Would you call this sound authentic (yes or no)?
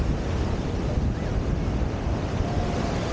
yes